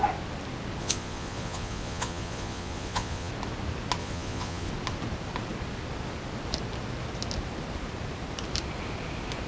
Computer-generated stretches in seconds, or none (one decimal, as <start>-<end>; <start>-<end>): 0.8-3.3; 4.0-4.7